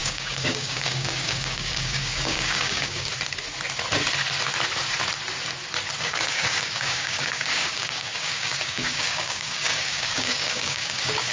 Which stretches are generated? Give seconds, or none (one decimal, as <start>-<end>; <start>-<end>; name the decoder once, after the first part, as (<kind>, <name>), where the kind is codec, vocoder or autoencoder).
0.0-3.1 (codec, DAC); 6.0-11.3